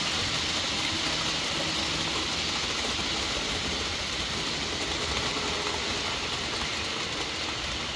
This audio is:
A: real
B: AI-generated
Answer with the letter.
A